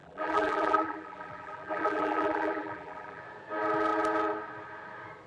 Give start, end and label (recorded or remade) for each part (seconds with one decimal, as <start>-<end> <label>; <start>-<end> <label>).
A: 0.0-3.2 remade; 3.2-5.3 recorded